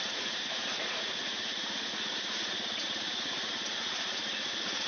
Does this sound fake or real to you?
fake